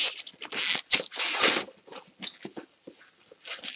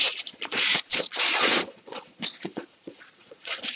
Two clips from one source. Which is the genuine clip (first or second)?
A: first